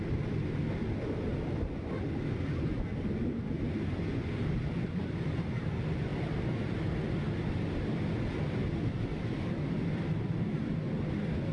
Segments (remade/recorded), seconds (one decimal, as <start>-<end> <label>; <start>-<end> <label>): 0.0-11.5 recorded